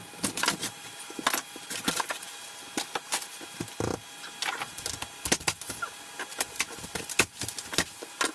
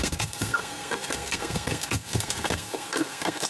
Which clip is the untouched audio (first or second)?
first